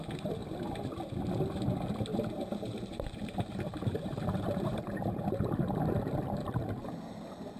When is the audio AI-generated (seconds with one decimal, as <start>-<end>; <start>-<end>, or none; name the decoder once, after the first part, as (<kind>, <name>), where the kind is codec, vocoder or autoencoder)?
0.4-1.0 (vocoder, BigVGAN v2); 2.1-6.7